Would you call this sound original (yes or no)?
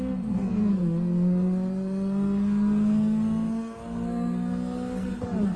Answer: no